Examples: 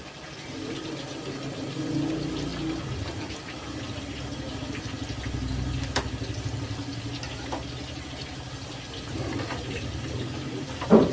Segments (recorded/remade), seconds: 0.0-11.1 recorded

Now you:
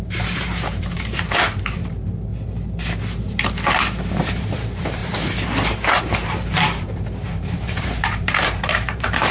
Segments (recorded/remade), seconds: 0.0-2.3 remade; 2.3-4.3 recorded; 4.3-5.0 remade; 5.0-6.0 recorded; 6.0-9.3 remade